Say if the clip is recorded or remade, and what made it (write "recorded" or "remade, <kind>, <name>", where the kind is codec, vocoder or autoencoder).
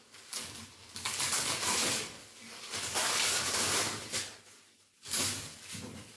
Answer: remade, codec, DAC